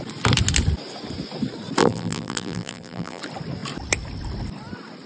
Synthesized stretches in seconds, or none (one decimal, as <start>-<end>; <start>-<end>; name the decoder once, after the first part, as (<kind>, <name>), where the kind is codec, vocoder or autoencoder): 1.8-3.2 (vocoder, BigVGAN v2)

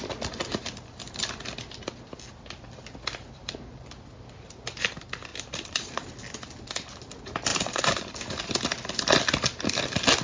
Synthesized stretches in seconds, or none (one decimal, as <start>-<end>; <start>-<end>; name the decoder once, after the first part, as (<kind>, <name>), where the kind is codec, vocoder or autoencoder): 5.3-6.2 (vocoder, BigVGAN v2); 7.5-8.1

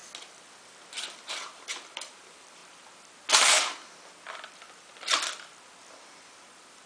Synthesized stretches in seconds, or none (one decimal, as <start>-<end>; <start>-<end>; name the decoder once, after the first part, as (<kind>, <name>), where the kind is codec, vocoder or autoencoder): 1.3-2.6 (vocoder, BigVGAN v2)